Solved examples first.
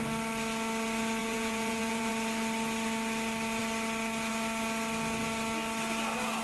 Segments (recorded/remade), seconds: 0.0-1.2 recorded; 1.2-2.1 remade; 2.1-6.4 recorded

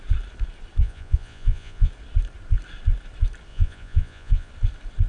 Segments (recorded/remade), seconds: 0.0-0.8 recorded; 0.8-1.9 remade; 1.9-3.5 recorded; 3.5-4.5 remade; 4.5-5.1 recorded

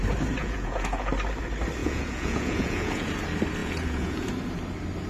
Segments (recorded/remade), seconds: 0.0-0.4 recorded; 0.4-1.1 remade; 1.1-1.8 recorded; 1.8-3.1 remade; 3.1-3.6 recorded; 3.6-4.3 remade; 4.3-5.1 recorded